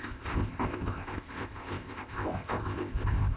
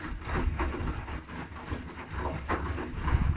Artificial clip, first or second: first